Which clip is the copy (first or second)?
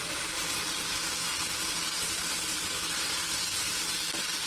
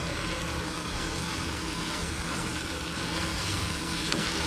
second